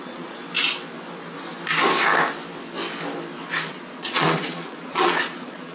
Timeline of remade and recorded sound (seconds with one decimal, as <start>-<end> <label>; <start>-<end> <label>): 0.0-0.4 remade; 0.4-3.7 recorded; 3.7-5.7 remade